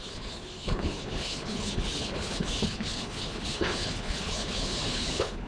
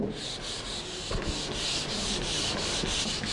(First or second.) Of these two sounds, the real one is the second